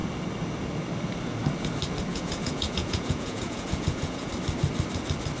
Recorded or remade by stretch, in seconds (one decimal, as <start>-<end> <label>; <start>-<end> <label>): 0.0-2.1 recorded; 2.1-4.3 remade; 4.3-5.4 recorded

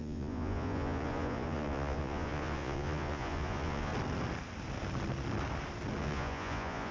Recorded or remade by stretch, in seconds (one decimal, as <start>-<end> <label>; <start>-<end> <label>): 0.0-3.9 remade; 3.9-6.0 recorded; 6.0-6.9 remade

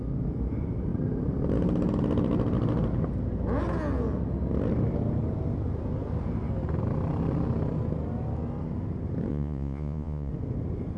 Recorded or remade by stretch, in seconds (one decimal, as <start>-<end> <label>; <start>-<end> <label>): 0.0-9.3 recorded; 9.3-10.3 remade; 10.3-11.0 recorded

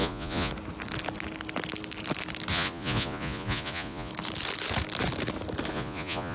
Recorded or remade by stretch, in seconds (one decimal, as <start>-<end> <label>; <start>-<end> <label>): 0.0-0.5 remade; 0.5-2.5 recorded; 2.5-4.1 remade; 4.1-5.7 recorded; 5.7-6.3 remade

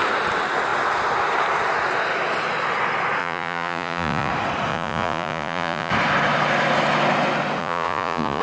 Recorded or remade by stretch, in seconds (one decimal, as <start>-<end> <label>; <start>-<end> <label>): 0.0-3.2 recorded; 3.2-4.3 remade; 4.3-4.7 recorded; 4.7-5.9 remade; 5.9-7.6 recorded; 7.6-8.4 remade

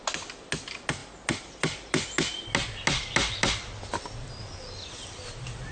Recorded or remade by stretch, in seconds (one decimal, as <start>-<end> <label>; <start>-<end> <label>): 0.0-5.7 recorded